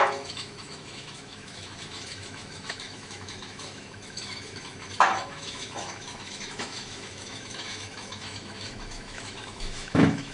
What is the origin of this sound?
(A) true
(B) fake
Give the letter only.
B